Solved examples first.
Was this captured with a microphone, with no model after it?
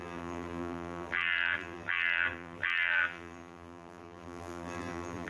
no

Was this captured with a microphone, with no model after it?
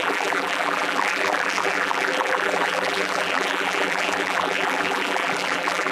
no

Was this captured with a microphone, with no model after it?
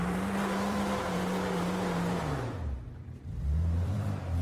no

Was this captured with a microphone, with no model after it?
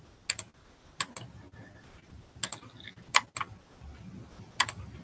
yes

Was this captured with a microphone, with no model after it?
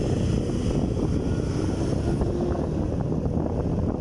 yes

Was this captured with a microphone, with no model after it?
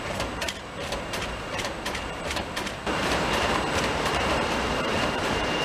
no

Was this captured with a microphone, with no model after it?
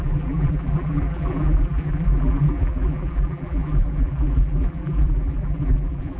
no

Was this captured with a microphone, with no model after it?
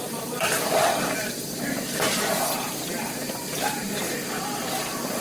no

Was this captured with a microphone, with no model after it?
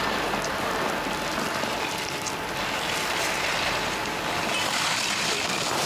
yes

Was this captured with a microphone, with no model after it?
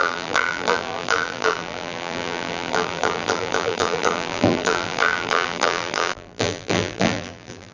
no